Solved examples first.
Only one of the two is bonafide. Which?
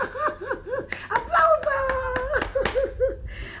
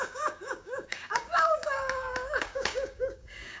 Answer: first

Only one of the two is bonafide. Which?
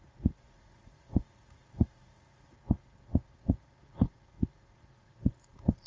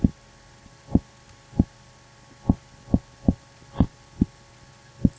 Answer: second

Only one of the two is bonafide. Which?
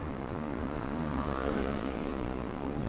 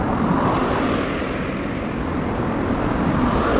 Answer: second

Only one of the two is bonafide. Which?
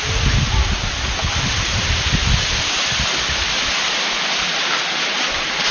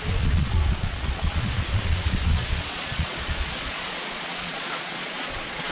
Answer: first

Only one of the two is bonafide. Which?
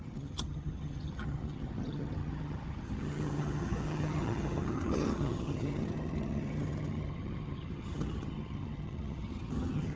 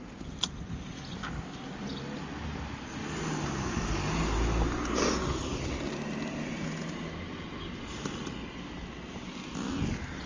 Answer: second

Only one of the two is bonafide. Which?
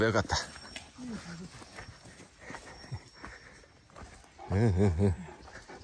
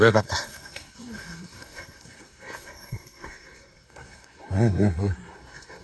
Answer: first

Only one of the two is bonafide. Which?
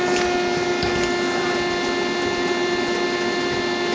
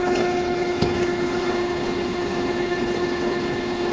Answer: first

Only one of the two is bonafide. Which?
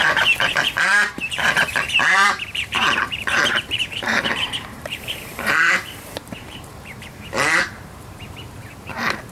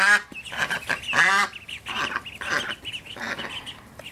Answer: second